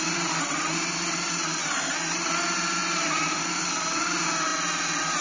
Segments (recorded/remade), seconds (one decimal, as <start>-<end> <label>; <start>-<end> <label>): 0.0-1.6 recorded; 1.6-2.3 remade; 2.3-2.8 recorded; 2.8-3.4 remade; 3.4-5.2 recorded